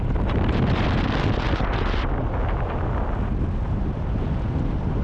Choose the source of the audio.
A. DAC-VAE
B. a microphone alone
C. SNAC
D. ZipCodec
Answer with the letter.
B